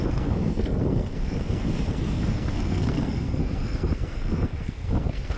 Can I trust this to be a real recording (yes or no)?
no